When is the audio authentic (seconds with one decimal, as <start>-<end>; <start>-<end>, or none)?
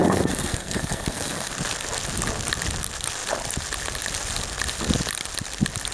1.5-5.9